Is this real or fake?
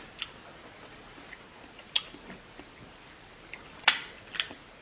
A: real